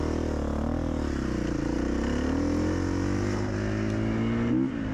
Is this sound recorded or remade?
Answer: recorded